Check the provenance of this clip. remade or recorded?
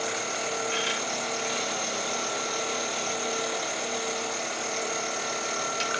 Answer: recorded